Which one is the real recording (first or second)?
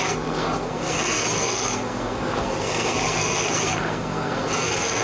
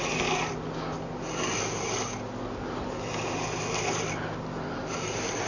second